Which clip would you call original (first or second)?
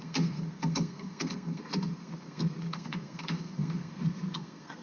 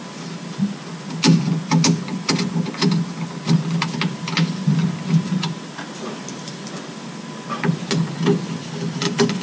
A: second